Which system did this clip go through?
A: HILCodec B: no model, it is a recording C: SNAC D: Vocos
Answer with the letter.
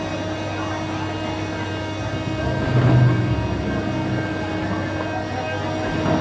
B